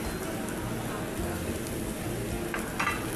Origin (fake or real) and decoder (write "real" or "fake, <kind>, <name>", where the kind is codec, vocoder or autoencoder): real